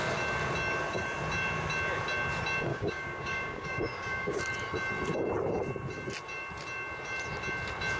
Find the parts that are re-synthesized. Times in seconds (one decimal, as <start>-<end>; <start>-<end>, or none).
2.7-4.4

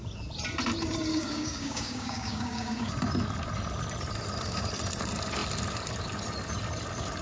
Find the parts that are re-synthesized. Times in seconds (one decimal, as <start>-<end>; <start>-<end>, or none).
1.1-2.9

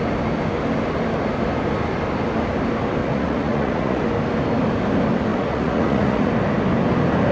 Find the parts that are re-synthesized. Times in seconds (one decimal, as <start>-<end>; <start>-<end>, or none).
3.0-4.0; 5.3-6.3

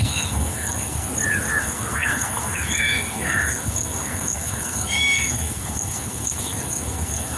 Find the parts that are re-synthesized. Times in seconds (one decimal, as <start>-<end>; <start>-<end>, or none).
0.0-1.1; 1.6-7.4